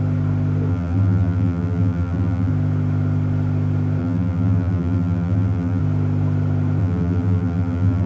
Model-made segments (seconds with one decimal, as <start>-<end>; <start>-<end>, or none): 0.7-2.5; 4.0-5.8; 6.8-8.1